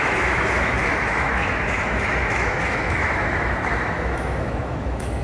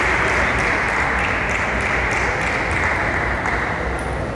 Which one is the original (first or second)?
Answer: second